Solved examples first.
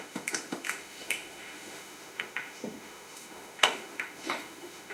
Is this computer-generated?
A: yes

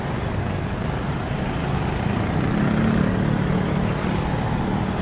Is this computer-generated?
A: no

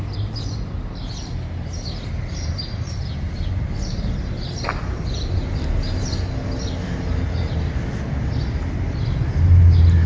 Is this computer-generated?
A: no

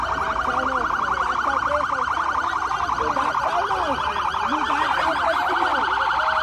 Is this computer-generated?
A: no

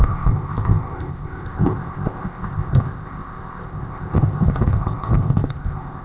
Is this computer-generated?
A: yes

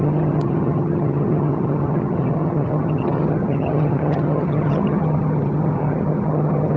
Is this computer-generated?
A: yes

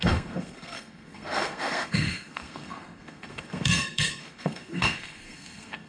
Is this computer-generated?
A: yes